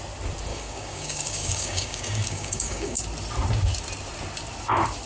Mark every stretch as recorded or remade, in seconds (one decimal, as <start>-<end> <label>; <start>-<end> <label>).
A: 0.0-0.5 recorded; 0.5-3.0 remade; 3.0-5.1 recorded